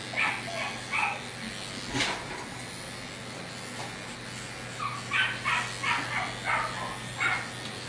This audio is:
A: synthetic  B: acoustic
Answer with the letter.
B